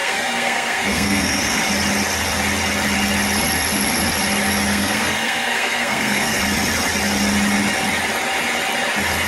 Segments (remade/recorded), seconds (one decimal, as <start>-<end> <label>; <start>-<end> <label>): 0.0-1.6 remade; 1.6-4.7 recorded; 4.7-6.4 remade; 6.4-9.3 recorded